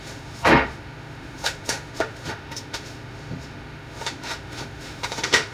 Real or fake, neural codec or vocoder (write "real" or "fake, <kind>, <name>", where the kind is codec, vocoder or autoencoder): fake, autoencoder, DAC-VAE